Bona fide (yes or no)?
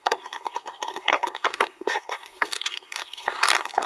no